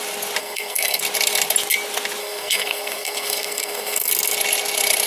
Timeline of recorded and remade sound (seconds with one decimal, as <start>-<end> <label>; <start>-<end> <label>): 0.0-0.4 recorded; 0.4-1.0 remade; 1.0-2.2 recorded; 2.2-4.1 remade; 4.1-5.1 recorded